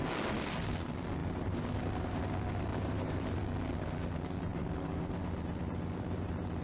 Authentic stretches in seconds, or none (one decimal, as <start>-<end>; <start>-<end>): 0.0-1.2; 2.2-2.7; 3.4-4.5